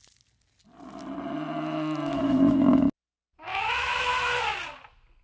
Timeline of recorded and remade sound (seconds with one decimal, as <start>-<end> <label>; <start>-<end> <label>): 0.0-2.1 recorded; 2.1-2.7 remade; 2.7-3.5 recorded; 3.5-4.3 remade; 4.3-5.2 recorded